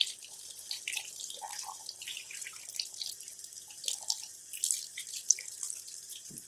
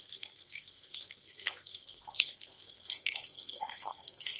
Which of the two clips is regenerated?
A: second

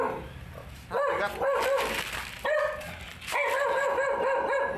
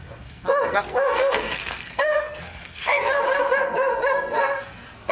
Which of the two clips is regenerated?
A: second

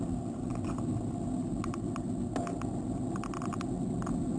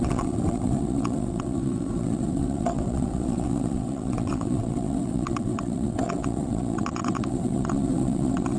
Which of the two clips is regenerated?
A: second